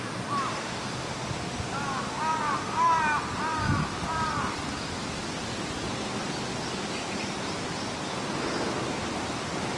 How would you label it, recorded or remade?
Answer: recorded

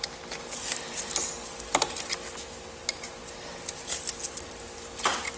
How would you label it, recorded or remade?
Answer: recorded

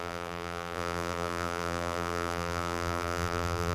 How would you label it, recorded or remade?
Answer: remade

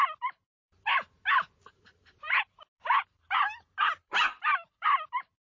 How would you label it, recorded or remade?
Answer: remade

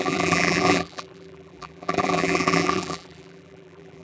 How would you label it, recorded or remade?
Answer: remade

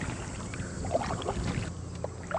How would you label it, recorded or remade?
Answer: recorded